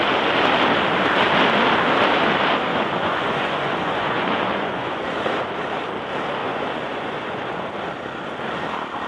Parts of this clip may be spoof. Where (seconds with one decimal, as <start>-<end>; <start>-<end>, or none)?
2.7-5.4; 6.4-7.7